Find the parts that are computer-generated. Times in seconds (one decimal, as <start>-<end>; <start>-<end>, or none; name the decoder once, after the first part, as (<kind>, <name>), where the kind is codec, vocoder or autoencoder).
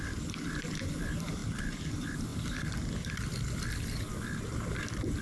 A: none